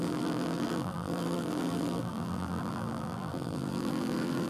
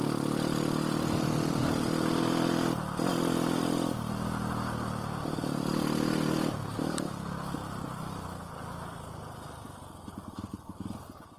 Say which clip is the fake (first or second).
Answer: first